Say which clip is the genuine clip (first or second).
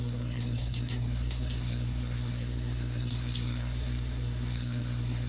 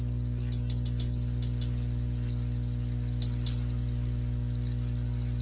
second